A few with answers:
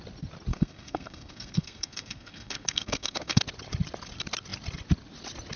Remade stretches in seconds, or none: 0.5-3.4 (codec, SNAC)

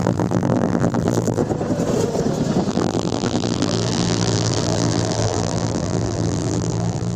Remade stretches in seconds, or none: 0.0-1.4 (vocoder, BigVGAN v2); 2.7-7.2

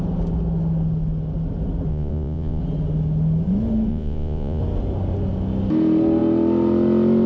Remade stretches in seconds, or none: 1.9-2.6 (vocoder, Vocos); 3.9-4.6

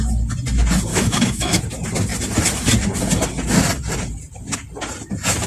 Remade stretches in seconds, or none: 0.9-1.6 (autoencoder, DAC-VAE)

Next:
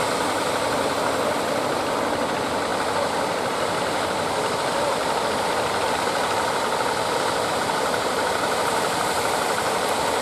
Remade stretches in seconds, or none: 7.5-9.2 (vocoder, BigVGAN v2)

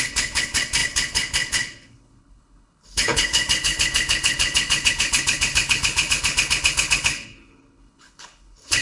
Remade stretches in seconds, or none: 0.0-8.8 (codec, HILCodec)

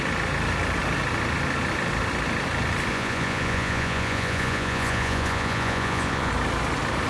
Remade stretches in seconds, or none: 2.9-6.3 (vocoder, Vocos)

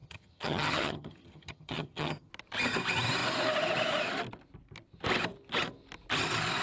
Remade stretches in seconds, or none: 0.0-2.3 (vocoder, HiFi-GAN)